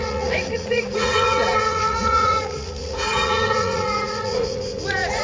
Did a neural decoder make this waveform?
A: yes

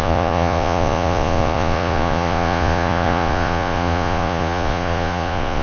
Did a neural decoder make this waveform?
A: yes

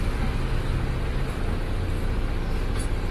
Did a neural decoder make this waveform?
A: no